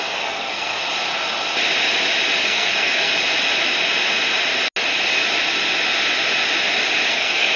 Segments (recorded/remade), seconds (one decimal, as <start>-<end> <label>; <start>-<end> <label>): 0.0-0.8 remade; 0.8-2.4 recorded; 2.4-3.1 remade; 3.1-7.1 recorded; 7.1-7.6 remade